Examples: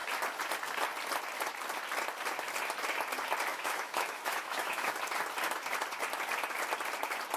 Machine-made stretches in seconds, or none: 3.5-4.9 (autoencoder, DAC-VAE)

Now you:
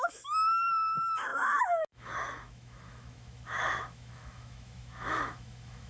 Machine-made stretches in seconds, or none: 0.0-5.9 (autoencoder, DAC-VAE)